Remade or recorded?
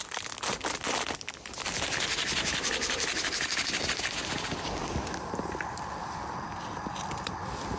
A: recorded